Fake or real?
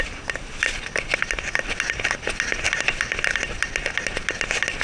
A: real